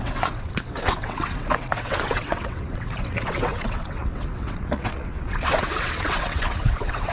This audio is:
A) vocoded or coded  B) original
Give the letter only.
A